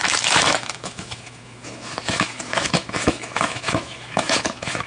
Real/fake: fake